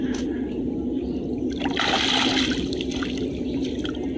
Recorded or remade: recorded